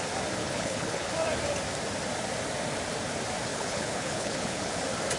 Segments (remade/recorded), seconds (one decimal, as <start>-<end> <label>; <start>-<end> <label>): 0.0-0.4 recorded; 0.4-1.1 remade; 1.1-3.5 recorded; 3.5-4.8 remade; 4.8-5.2 recorded